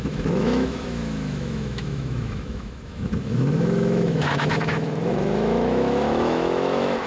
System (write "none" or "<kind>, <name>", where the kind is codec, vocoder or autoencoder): autoencoder, DAC-VAE